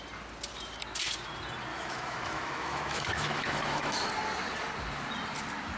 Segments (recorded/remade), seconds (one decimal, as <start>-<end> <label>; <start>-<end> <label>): 0.0-1.7 recorded; 1.7-4.1 remade; 4.1-5.8 recorded